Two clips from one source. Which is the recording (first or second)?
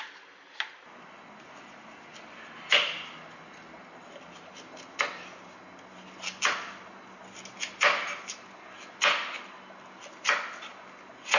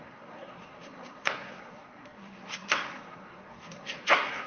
first